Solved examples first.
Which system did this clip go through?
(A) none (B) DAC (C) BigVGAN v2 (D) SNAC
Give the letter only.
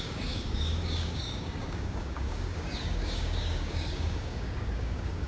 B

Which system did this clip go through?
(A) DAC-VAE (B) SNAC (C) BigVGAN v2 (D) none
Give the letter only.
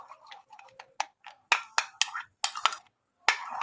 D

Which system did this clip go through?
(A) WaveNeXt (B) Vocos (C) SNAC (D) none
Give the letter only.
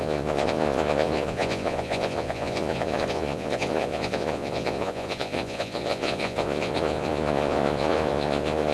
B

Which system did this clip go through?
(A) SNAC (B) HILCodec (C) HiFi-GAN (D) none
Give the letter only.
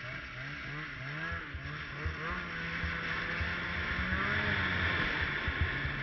D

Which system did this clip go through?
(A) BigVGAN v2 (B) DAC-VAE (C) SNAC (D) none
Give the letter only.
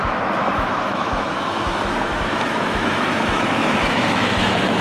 B